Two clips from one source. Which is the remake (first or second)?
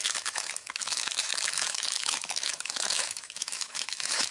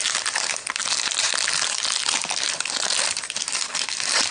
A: first